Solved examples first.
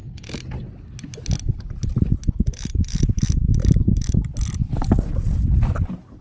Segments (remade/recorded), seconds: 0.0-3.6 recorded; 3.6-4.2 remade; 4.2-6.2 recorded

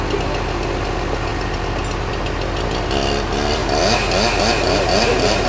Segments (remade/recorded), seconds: 0.0-5.5 recorded

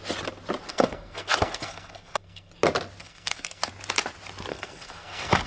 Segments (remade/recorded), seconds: 0.0-0.7 recorded; 0.7-2.5 remade; 2.5-3.0 recorded; 3.0-3.7 remade; 3.7-4.5 recorded; 4.5-5.5 remade

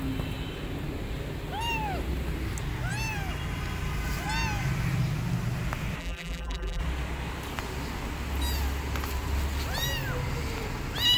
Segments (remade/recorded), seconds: 0.0-6.0 recorded; 6.0-6.8 remade; 6.8-11.2 recorded

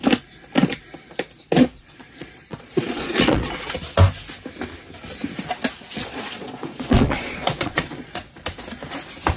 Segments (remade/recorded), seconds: 0.0-1.7 recorded; 1.7-3.5 remade; 3.5-5.9 recorded; 5.9-8.3 remade; 8.3-9.4 recorded

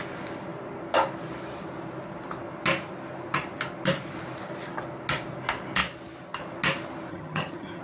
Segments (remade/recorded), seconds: 0.0-7.1 recorded; 7.1-7.8 remade

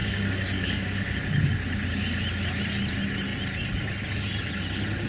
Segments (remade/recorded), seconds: 0.0-1.2 remade; 1.2-5.1 recorded